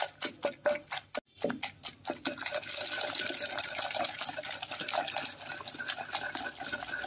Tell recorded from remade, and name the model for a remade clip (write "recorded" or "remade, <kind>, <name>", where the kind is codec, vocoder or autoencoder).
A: recorded